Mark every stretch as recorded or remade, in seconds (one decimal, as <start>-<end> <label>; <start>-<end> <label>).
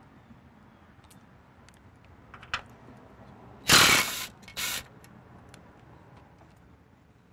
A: 0.0-7.3 recorded